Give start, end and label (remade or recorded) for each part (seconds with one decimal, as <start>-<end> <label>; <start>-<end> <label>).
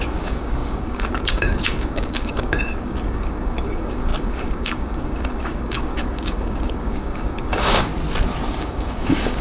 0.0-7.9 remade; 7.9-8.5 recorded; 8.5-9.4 remade